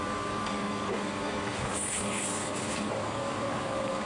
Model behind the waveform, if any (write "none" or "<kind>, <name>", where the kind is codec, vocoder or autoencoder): codec, DAC